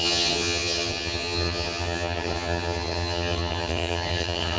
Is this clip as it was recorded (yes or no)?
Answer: no